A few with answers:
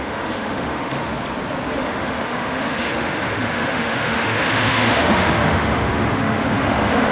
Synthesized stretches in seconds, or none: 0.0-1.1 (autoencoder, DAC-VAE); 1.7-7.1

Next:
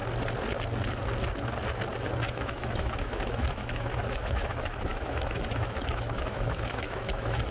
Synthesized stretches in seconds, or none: 2.3-7.5 (autoencoder, DAC-VAE)